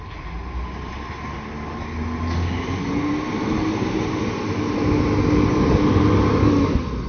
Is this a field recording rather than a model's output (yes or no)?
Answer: yes